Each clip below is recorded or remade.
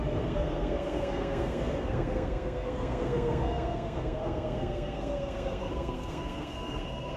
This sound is remade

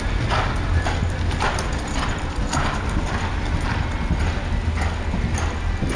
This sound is recorded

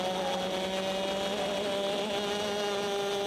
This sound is recorded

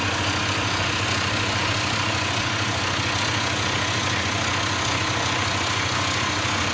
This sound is remade